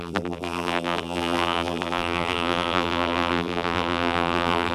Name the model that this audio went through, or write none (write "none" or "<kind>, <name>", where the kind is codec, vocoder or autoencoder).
vocoder, BigVGAN v2